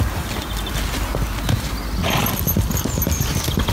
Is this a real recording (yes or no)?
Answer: yes